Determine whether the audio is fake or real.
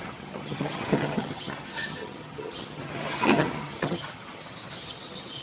fake